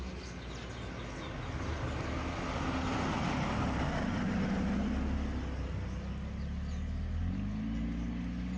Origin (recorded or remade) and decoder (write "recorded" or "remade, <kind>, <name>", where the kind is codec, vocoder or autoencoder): recorded